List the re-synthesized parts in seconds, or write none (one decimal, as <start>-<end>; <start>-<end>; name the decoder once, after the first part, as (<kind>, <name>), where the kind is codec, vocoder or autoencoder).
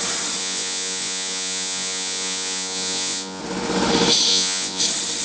0.4-3.4 (vocoder, Vocos); 4.3-4.8